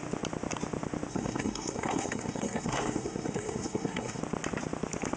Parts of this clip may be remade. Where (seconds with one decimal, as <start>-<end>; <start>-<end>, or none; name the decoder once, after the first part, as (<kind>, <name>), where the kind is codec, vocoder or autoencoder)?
1.1-4.2 (codec, SNAC)